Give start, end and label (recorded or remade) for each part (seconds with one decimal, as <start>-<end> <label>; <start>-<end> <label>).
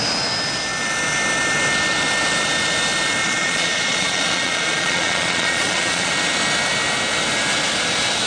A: 0.0-3.2 recorded; 3.2-6.1 remade; 6.1-8.3 recorded